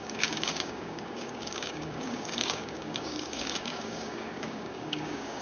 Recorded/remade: remade